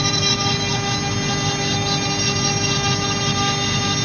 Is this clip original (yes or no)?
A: yes